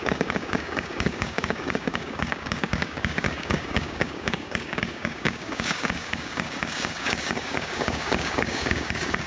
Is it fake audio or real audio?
fake